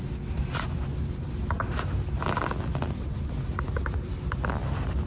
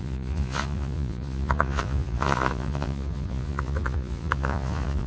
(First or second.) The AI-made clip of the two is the second